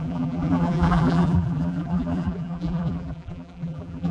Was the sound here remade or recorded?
remade